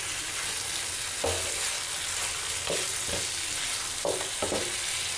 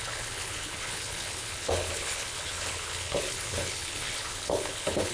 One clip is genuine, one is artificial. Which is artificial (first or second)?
second